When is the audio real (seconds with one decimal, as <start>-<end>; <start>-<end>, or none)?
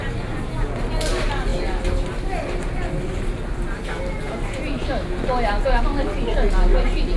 0.0-7.2